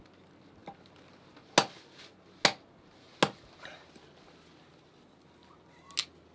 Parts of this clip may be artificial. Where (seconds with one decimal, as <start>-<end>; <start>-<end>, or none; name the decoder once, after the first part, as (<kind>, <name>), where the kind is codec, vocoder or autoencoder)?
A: none